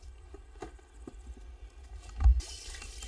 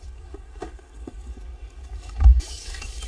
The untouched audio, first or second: first